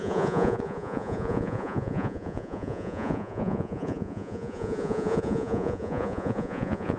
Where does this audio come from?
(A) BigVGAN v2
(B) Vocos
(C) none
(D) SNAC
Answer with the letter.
B